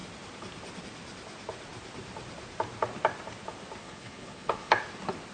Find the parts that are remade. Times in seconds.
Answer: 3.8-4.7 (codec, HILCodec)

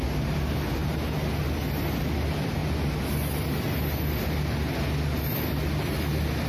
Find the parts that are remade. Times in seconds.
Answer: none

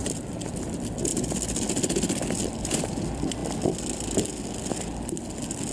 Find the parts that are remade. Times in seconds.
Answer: 0.5-1.1 (vocoder, BigVGAN v2); 2.6-3.4

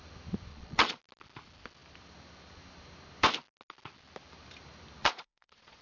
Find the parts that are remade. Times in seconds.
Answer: 0.5-1.0 (vocoder, Vocos); 5.0-5.8

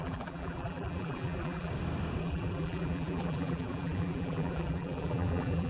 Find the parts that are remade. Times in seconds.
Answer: 0.0-1.7 (vocoder, BigVGAN v2); 2.2-5.7

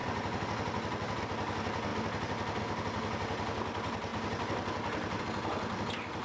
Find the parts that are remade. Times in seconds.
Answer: none

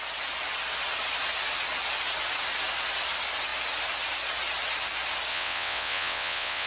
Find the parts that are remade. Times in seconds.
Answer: 5.3-6.7 (vocoder, WaveNeXt)